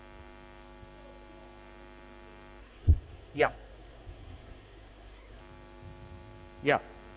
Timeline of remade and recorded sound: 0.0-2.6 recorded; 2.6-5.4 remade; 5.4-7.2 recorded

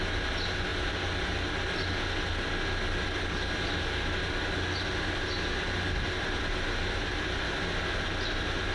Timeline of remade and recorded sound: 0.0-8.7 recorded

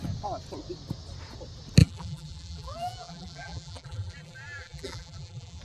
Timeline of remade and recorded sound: 0.0-1.8 recorded; 1.8-5.6 remade